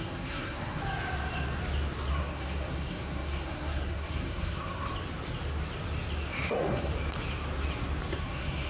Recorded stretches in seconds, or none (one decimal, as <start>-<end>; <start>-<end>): 0.8-2.1; 4.9-6.3; 6.9-8.2